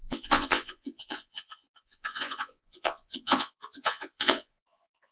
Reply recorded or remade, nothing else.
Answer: remade